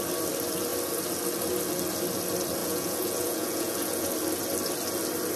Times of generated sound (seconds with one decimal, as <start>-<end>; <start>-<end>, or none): 2.6-4.1